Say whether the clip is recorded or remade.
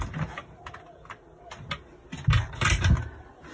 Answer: recorded